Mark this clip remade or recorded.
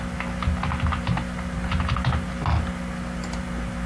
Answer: recorded